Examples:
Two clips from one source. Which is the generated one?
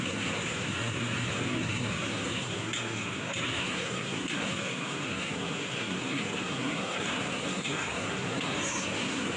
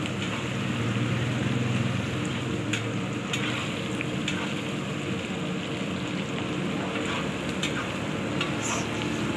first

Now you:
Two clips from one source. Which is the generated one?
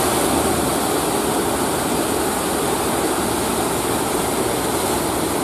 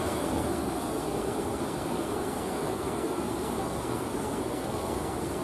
second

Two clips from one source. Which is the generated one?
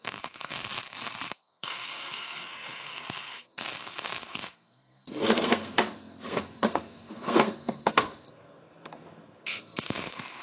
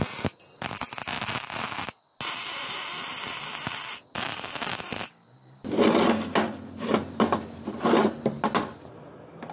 first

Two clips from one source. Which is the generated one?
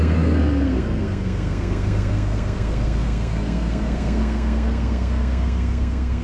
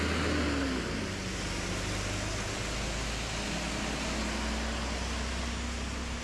first